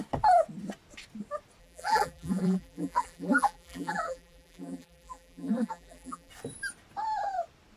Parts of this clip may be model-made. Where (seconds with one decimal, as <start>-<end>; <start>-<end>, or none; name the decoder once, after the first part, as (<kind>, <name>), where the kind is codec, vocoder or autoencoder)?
1.6-6.3 (vocoder, BigVGAN v2)